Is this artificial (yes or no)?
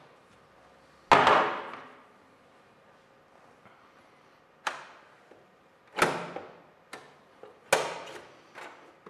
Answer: no